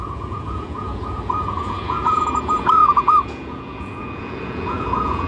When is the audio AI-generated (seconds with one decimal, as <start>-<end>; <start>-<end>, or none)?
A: 0.0-5.3